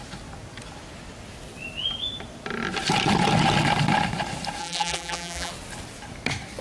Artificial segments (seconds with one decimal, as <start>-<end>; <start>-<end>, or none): 4.6-5.5